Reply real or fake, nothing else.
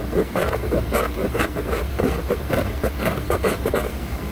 fake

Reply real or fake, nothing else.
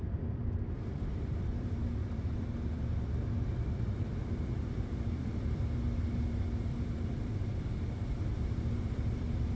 fake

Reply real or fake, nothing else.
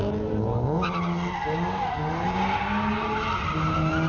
real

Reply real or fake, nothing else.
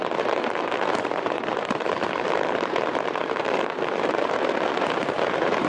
fake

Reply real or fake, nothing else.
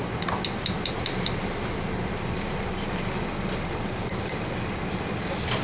real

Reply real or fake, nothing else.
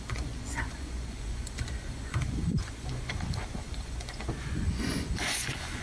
fake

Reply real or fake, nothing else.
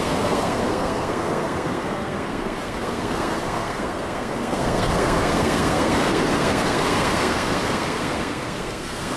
fake